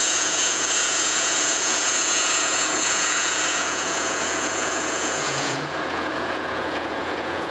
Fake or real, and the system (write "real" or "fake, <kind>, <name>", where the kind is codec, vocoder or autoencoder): fake, vocoder, Vocos